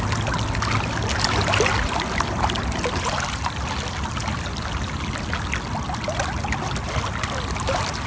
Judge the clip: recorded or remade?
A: recorded